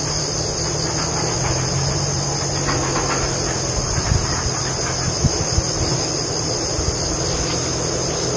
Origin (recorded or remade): recorded